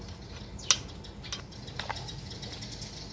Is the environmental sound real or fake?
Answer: real